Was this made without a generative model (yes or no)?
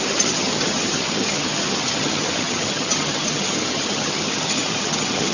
no